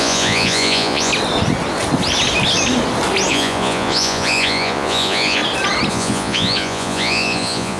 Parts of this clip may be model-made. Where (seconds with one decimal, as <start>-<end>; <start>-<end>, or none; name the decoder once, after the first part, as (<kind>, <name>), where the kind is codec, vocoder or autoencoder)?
0.0-1.1 (vocoder, Vocos); 3.3-5.4; 5.9-7.8